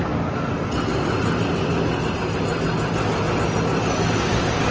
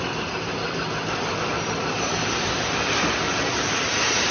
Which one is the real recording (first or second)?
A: first